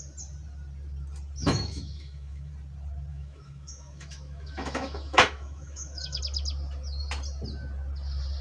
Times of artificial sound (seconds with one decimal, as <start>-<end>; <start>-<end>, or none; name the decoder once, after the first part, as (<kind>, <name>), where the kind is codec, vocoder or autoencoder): 1.4-2.5 (autoencoder, DAC-VAE); 3.1-6.2